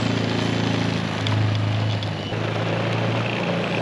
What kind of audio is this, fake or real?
real